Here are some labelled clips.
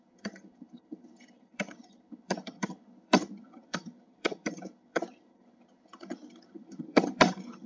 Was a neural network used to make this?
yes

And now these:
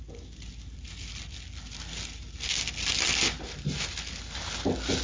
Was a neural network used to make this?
no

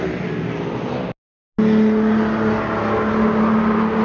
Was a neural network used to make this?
no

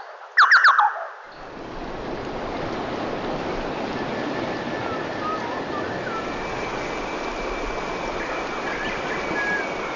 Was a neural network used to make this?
no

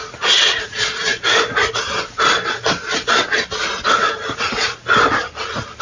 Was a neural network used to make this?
no